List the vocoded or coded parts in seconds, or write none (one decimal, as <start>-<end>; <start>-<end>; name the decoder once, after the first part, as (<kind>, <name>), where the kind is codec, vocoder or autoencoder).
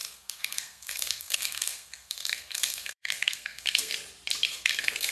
0.0-3.9 (codec, SNAC); 4.5-5.1